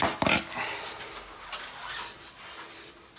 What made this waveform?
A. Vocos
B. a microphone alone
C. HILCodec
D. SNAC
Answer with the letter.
B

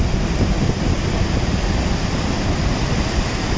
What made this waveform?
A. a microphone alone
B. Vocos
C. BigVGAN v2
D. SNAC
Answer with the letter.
A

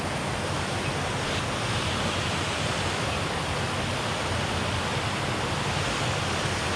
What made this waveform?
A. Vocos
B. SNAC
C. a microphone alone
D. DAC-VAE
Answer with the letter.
C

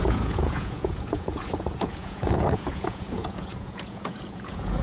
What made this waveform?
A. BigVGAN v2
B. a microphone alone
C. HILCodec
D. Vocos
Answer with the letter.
D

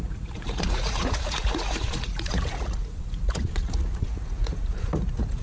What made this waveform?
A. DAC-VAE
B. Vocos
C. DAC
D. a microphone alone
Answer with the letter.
B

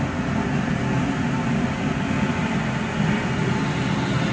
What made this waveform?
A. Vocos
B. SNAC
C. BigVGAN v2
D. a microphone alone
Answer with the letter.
D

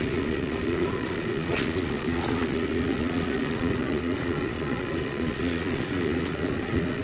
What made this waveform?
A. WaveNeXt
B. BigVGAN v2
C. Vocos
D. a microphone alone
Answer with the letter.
C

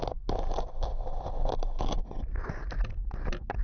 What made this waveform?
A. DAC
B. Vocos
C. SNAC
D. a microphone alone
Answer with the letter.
D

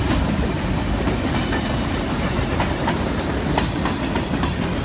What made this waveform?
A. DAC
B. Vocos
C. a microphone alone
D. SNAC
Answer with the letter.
C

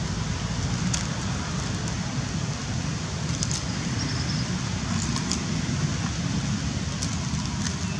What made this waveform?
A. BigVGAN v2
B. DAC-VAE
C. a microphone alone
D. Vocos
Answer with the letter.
C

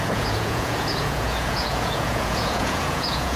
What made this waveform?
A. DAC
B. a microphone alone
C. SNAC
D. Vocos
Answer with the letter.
D